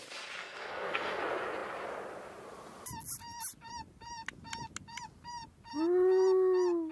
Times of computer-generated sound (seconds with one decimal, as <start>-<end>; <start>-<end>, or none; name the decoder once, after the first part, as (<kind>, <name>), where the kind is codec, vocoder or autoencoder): 0.4-1.2 (codec, SNAC)